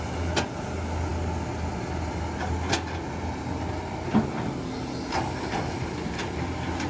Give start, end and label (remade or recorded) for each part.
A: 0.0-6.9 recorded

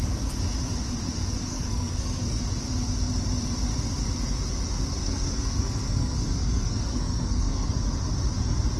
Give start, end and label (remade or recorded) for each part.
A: 0.0-1.5 recorded; 1.5-2.4 remade; 2.4-5.0 recorded; 5.0-7.7 remade; 7.7-8.8 recorded

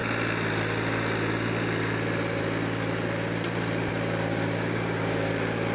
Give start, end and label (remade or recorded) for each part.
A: 0.0-4.3 recorded; 4.3-5.3 remade; 5.3-5.7 recorded

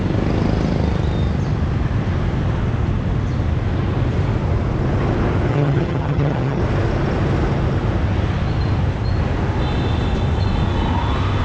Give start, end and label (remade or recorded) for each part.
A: 0.0-5.5 recorded; 5.5-6.6 remade; 6.6-11.4 recorded